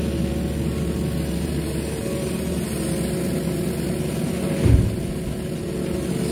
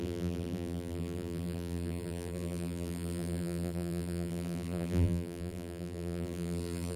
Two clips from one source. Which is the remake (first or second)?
second